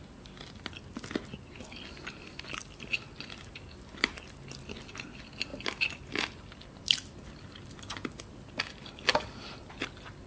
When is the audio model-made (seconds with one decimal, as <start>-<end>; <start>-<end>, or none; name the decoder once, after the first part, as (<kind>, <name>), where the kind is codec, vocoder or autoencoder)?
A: none